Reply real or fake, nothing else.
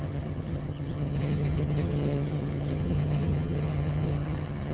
fake